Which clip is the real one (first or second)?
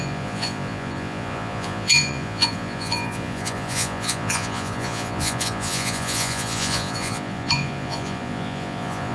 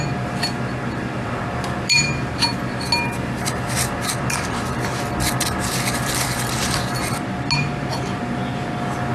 second